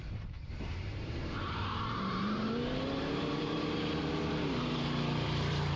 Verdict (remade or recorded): remade